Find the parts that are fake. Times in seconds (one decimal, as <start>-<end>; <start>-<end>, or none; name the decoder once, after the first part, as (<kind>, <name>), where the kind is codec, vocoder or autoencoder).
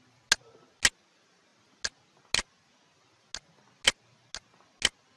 none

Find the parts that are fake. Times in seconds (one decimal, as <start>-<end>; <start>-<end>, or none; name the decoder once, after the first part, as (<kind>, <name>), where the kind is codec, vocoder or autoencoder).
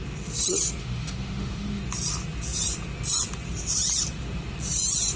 0.8-1.8 (autoencoder, DAC-VAE)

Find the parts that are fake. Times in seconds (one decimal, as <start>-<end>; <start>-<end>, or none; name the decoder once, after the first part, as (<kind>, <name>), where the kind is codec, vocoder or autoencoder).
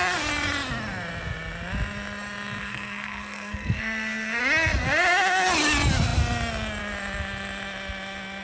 2.6-4.4 (codec, SNAC)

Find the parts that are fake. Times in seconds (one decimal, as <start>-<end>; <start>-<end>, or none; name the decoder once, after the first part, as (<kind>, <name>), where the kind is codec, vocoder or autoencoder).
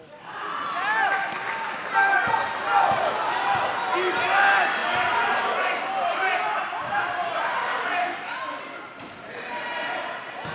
none